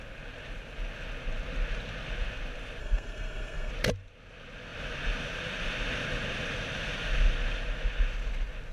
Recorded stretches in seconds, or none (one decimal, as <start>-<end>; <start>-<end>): 0.0-2.8; 3.7-8.7